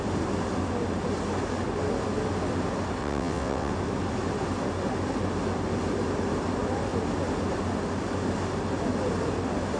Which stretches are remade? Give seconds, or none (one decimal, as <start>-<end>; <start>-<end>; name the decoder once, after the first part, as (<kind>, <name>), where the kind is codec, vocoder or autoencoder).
3.0-3.7 (vocoder, WaveNeXt)

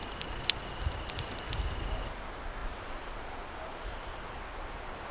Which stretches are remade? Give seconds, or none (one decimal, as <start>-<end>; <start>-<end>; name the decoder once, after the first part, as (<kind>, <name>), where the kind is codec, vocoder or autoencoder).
none

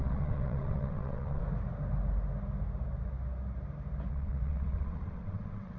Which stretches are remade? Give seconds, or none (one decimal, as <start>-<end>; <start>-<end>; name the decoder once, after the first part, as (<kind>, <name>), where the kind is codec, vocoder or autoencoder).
0.0-1.4 (vocoder, WaveNeXt); 4.1-5.8

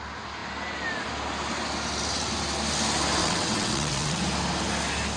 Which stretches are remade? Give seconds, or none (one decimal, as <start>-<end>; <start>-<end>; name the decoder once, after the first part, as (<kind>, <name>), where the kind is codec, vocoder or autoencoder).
3.2-4.2 (vocoder, WaveNeXt)

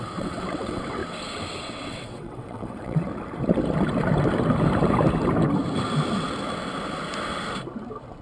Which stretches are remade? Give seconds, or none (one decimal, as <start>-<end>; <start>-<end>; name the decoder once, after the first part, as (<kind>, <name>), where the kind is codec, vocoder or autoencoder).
0.0-1.0 (vocoder, WaveNeXt); 1.6-3.1